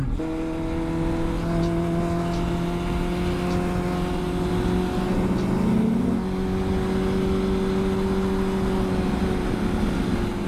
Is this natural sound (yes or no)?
yes